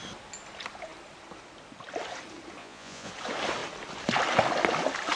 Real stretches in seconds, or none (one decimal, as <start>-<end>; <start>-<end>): 0.0-2.6; 3.1-5.2